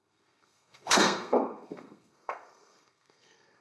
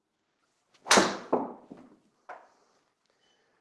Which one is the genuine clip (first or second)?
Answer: second